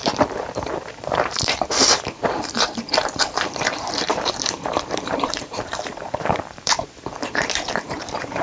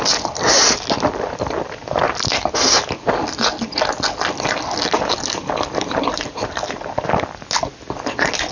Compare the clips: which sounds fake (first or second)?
first